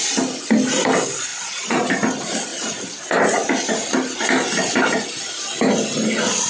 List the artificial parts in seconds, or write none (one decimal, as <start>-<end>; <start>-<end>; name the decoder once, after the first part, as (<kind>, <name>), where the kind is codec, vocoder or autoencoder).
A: 1.3-1.9 (vocoder, Vocos)